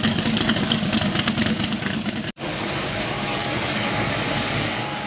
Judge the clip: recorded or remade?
remade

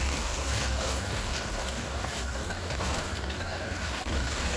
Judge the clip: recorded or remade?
remade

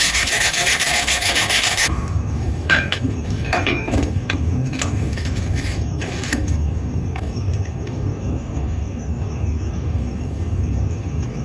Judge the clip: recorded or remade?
remade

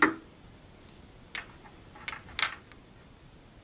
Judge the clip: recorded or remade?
recorded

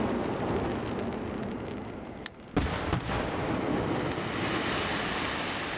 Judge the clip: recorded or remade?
recorded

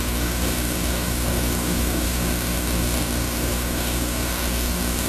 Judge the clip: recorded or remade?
remade